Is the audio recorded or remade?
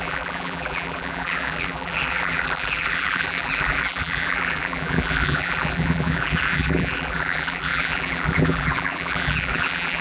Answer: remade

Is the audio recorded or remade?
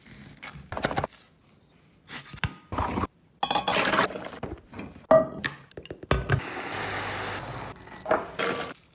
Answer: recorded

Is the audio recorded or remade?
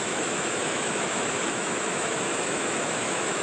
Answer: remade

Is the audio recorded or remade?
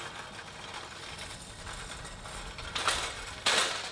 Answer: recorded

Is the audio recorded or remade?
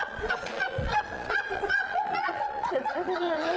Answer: remade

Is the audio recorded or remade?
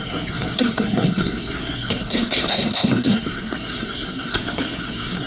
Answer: remade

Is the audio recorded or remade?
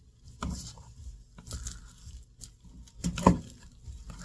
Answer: recorded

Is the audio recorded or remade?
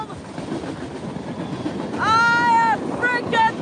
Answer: recorded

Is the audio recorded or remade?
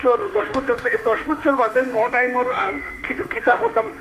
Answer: remade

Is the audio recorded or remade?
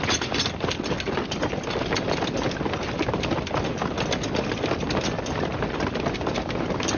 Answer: recorded